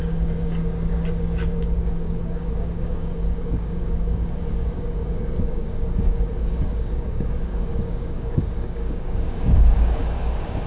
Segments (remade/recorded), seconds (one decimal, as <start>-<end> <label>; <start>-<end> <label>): 0.0-10.7 remade